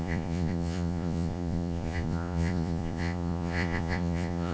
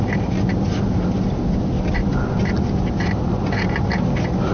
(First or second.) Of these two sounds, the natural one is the second